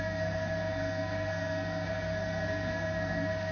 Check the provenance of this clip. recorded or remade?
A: remade